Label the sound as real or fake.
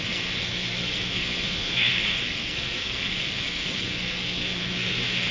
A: fake